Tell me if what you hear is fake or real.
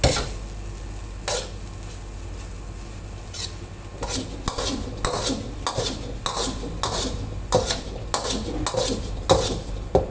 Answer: real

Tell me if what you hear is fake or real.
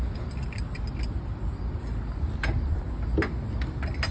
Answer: real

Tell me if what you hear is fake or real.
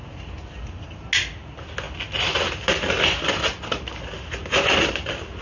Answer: real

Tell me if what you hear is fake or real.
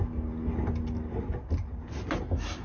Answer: real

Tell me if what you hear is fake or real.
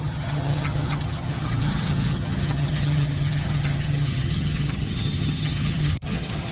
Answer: fake